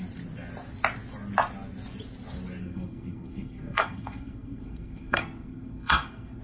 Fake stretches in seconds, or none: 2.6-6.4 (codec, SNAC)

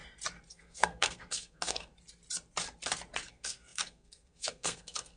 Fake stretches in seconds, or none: 0.5-1.9 (codec, SNAC); 3.3-5.2